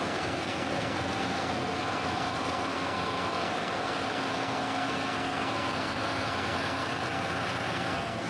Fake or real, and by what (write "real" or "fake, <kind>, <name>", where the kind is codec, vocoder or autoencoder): fake, codec, SNAC